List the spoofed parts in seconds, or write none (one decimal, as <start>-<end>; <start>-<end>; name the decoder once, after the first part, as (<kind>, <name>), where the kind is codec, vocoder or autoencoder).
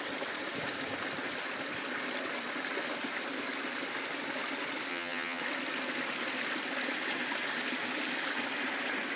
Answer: 4.9-5.4 (vocoder, HiFi-GAN)